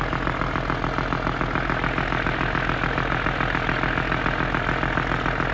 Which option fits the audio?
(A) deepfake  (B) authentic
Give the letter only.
B